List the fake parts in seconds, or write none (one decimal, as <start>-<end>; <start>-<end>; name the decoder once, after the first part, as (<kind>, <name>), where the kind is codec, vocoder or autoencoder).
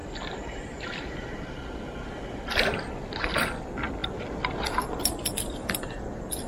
none